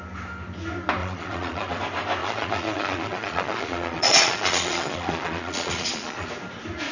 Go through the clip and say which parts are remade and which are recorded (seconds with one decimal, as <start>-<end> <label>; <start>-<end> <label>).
0.0-1.0 recorded; 1.0-1.8 remade; 1.8-2.2 recorded; 2.2-6.3 remade; 6.3-6.9 recorded